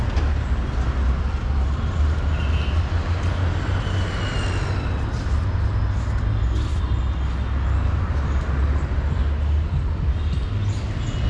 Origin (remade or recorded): recorded